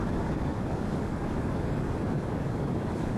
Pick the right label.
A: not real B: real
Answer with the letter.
A